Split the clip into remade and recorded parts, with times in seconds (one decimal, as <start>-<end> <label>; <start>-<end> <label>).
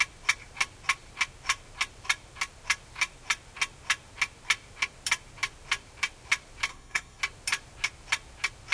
0.0-6.7 recorded; 6.7-7.2 remade; 7.2-8.7 recorded